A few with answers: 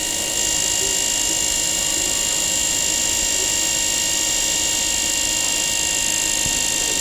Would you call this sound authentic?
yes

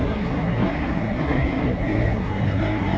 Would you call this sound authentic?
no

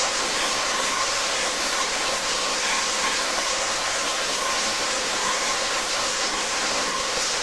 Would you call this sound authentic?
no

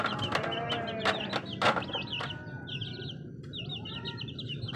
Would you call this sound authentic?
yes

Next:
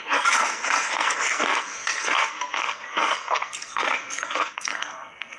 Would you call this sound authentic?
no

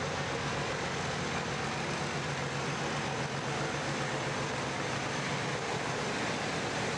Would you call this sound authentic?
yes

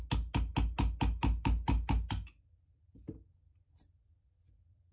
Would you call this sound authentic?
yes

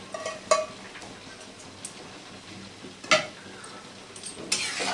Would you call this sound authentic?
yes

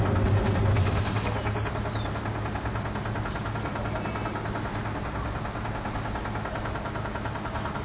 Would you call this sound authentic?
yes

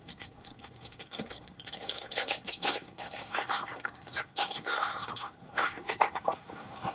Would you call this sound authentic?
no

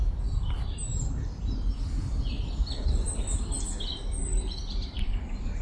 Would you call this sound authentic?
yes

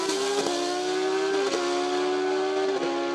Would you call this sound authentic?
yes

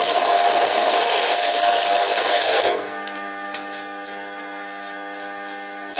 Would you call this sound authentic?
no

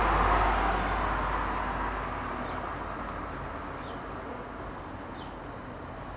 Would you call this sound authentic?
yes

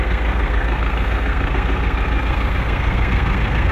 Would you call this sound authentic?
no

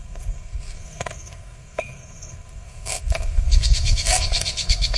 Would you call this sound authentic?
no